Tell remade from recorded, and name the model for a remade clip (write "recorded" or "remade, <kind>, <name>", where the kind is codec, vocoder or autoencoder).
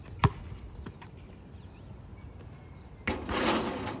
recorded